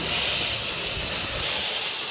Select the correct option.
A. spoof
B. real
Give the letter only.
B